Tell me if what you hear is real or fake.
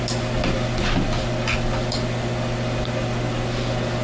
real